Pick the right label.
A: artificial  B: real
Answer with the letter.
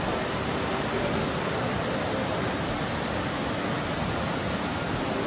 B